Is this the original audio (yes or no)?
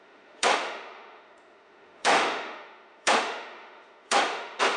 no